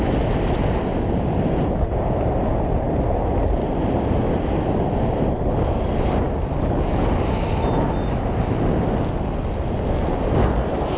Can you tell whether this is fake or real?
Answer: real